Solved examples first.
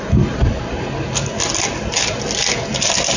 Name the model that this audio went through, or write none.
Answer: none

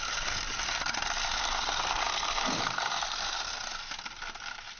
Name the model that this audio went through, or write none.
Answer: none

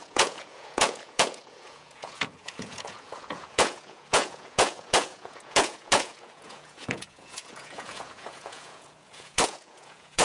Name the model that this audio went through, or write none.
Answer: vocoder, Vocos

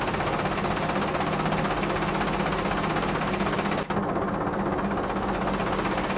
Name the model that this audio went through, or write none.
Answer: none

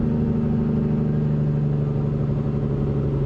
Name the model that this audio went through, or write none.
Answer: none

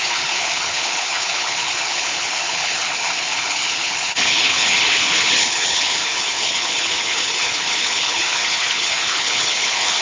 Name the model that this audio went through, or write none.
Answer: codec, HILCodec